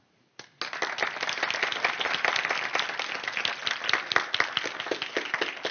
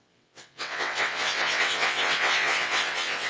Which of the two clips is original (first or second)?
first